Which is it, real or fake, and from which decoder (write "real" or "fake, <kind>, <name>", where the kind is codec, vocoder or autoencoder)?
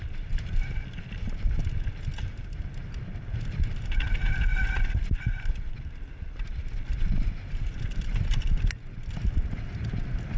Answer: real